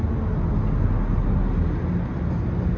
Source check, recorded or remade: recorded